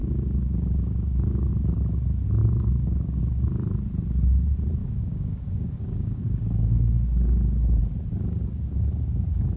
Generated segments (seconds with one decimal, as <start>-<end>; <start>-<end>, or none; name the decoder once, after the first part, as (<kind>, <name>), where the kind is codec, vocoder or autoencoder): 0.0-1.5 (codec, DAC); 2.4-3.2; 4.8-7.8